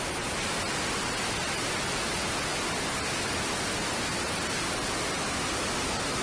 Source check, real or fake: real